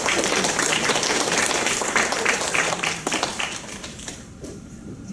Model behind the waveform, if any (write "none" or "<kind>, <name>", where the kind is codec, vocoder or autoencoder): vocoder, BigVGAN v2